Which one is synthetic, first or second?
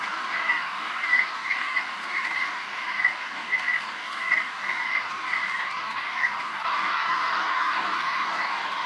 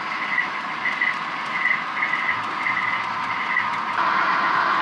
first